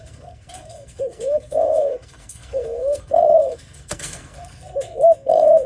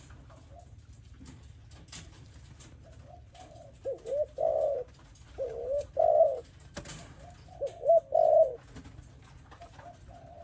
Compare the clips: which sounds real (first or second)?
second